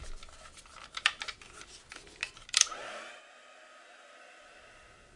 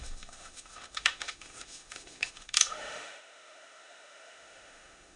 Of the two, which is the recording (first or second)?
first